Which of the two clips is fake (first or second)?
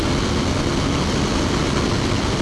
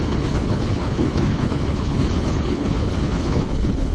second